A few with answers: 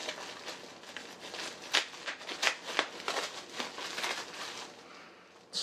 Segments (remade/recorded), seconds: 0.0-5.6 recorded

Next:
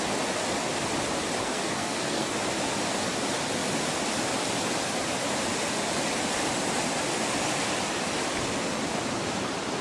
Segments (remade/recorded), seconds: 0.0-1.4 recorded; 1.4-2.3 remade; 2.3-9.8 recorded

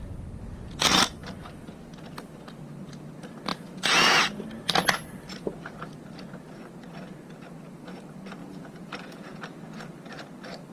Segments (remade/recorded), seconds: 0.0-3.5 recorded; 3.5-4.4 remade; 4.4-8.4 recorded; 8.4-9.4 remade; 9.4-10.7 recorded

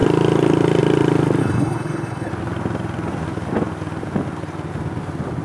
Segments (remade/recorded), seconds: 0.0-1.4 recorded; 1.4-2.3 remade; 2.3-5.4 recorded

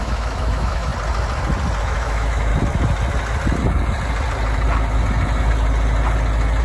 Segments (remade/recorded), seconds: 0.0-0.9 remade; 0.9-1.8 recorded; 1.8-2.5 remade; 2.5-6.6 recorded

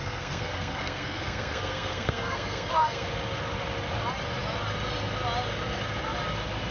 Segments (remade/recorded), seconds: 0.0-3.1 remade; 3.1-6.7 recorded